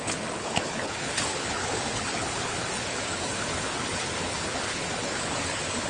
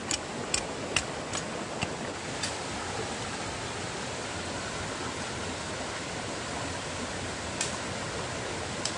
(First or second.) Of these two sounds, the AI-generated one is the first